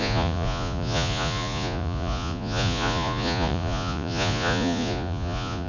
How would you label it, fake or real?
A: fake